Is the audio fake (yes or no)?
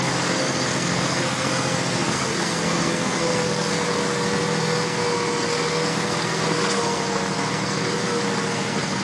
yes